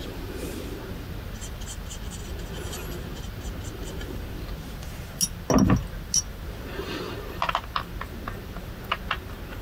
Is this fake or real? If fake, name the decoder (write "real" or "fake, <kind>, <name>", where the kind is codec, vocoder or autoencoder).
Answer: real